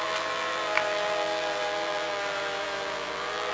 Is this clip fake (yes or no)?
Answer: yes